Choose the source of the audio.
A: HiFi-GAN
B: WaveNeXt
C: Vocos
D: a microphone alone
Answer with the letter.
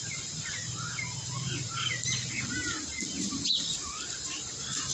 D